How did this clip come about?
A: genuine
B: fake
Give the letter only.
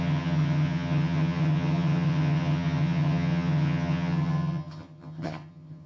B